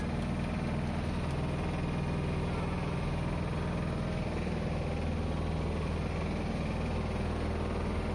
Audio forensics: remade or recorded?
recorded